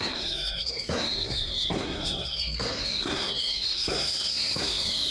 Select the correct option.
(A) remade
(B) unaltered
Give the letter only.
A